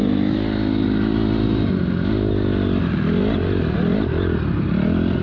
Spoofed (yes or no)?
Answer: no